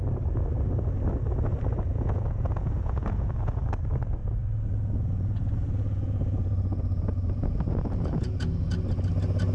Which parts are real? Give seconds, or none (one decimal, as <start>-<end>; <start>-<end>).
0.0-1.9; 3.6-4.2; 8.7-9.5

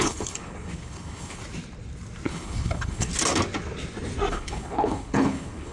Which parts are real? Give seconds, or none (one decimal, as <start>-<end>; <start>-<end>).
1.4-2.3; 3.1-4.3